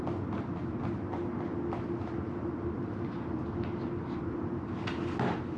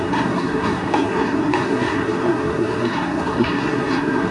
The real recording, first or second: first